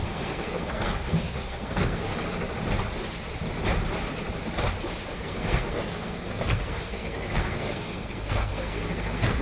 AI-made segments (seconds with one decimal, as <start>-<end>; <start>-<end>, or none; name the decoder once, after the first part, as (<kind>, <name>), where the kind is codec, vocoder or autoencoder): 0.0-2.1 (codec, SNAC); 5.1-9.4